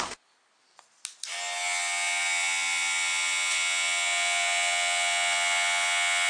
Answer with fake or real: real